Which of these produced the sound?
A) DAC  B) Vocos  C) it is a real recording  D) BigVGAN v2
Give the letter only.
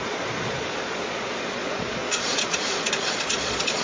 B